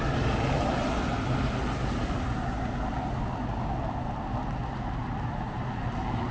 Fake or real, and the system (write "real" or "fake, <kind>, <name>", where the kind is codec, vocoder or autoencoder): real